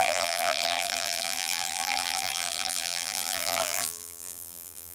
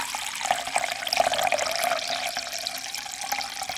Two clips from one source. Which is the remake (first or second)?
first